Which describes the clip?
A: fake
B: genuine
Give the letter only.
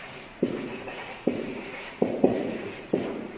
A